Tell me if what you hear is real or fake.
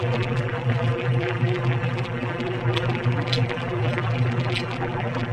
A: fake